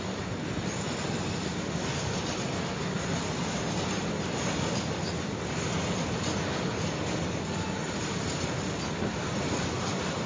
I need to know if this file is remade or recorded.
recorded